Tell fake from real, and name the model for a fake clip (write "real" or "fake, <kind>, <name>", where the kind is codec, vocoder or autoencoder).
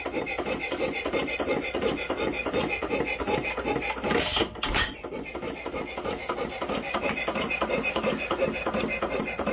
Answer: real